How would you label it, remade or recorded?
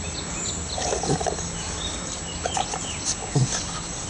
recorded